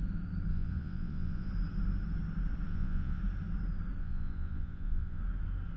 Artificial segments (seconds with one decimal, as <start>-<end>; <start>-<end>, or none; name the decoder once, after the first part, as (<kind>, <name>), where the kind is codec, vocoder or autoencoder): 0.5-1.5 (vocoder, Vocos); 2.7-3.2; 4.0-5.2

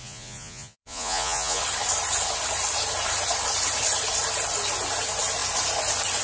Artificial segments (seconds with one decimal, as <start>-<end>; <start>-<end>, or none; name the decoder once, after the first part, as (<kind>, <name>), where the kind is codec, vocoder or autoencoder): 0.0-1.6 (vocoder, Vocos)

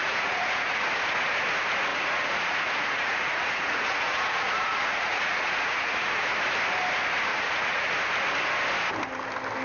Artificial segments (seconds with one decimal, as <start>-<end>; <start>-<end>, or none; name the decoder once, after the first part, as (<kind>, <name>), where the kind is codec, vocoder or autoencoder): 0.0-0.8 (vocoder, Vocos); 1.9-6.3; 7.3-7.9

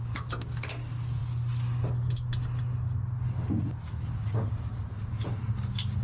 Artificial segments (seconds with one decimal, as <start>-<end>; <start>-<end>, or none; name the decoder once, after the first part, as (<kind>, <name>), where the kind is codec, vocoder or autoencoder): none

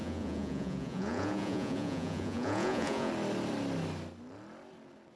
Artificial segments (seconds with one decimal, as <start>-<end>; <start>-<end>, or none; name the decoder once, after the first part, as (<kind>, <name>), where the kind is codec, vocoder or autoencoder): 0.0-3.1 (vocoder, Vocos)

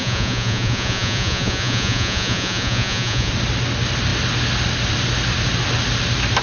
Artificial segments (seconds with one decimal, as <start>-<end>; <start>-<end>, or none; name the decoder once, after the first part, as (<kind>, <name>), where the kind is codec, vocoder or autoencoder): 0.0-3.3 (vocoder, Vocos)